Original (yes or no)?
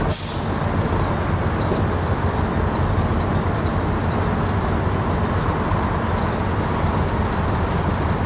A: yes